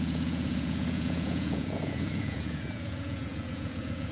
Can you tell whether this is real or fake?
fake